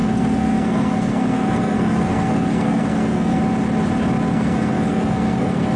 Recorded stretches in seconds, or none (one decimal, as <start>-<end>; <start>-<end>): 3.4-4.3